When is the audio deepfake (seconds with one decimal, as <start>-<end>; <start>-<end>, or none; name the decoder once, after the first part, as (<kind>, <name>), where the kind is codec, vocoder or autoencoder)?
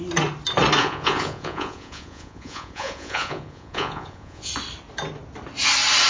0.8-4.5 (vocoder, Vocos)